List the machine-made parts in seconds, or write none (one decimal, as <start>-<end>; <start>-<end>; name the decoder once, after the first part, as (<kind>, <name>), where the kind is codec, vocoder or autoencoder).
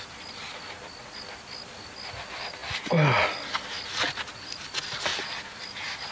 none